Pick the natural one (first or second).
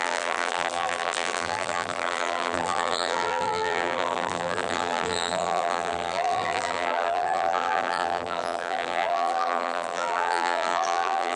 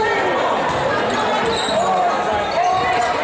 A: second